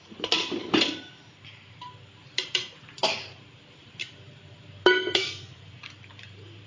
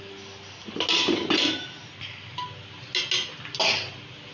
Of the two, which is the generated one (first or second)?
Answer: first